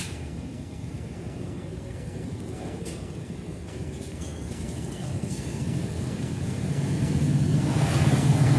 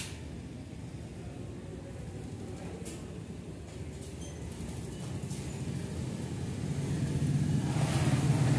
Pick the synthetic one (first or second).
first